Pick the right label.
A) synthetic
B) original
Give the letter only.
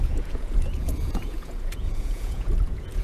A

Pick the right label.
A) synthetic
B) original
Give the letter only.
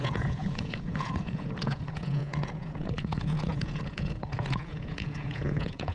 A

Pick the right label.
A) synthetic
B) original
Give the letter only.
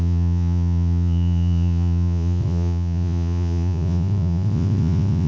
A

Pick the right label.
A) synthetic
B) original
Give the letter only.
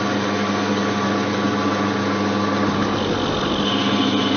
B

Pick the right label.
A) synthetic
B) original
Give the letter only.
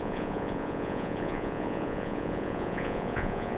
A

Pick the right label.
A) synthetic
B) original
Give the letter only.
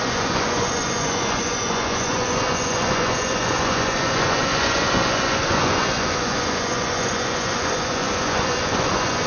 A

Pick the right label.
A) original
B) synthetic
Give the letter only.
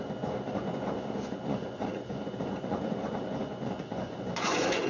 B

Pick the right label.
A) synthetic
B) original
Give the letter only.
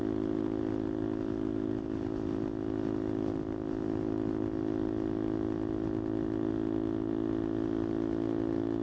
B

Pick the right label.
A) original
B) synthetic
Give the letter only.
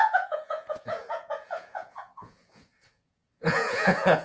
B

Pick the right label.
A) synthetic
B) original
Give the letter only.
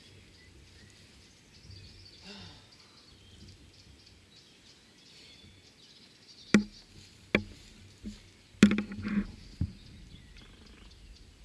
B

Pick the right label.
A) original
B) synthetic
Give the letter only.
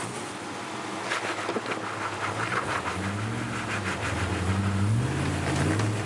A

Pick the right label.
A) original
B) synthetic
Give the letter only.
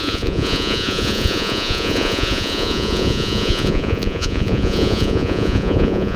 B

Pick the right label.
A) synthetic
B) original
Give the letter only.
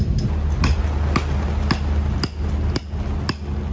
B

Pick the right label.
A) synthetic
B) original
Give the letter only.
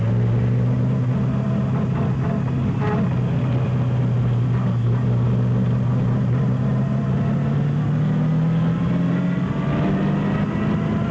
B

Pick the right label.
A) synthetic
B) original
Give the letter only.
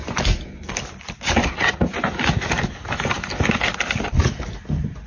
B